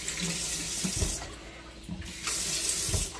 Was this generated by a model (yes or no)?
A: no